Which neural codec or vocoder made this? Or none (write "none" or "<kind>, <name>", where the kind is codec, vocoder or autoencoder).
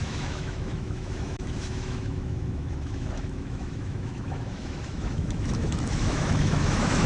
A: autoencoder, DAC-VAE